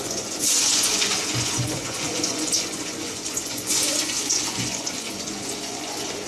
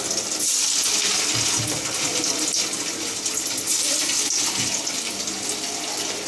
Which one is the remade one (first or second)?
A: first